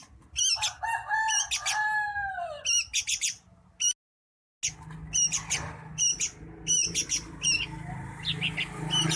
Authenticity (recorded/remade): recorded